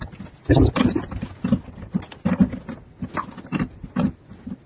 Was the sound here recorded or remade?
recorded